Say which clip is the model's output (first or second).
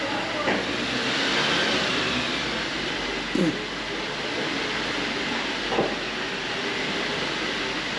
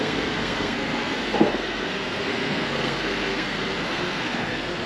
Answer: second